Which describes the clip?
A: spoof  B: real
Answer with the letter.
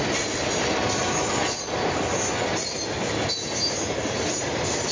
B